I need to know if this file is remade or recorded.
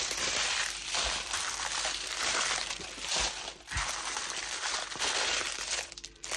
remade